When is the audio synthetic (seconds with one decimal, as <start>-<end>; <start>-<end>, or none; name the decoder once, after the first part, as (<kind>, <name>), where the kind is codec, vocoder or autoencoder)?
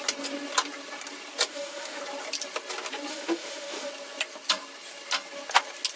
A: 1.5-2.0 (autoencoder, DAC-VAE); 3.1-3.9